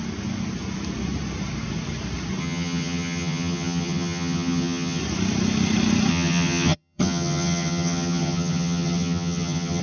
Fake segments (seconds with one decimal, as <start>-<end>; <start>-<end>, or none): 2.4-5.0; 6.1-9.8